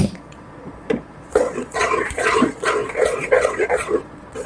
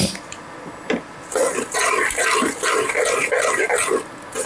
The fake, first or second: first